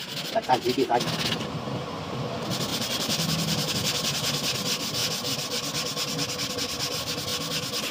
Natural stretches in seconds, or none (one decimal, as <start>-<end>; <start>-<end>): 0.0-2.7; 3.7-7.9